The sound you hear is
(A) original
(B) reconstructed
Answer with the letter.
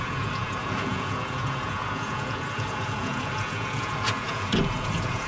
B